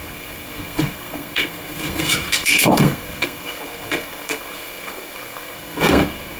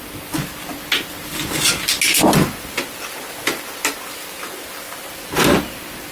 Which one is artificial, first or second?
first